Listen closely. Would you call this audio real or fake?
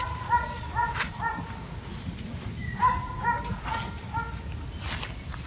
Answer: real